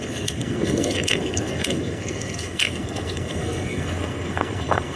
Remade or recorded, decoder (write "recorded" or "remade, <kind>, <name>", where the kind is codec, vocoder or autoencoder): remade, codec, SNAC